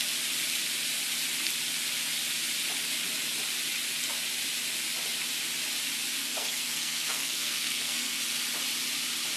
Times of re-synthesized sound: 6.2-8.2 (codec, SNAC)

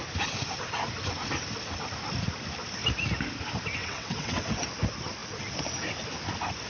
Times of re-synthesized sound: 3.8-4.6 (vocoder, WaveNeXt)